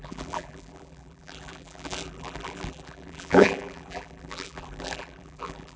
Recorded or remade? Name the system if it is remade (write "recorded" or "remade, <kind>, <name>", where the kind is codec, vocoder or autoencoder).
remade, vocoder, BigVGAN v2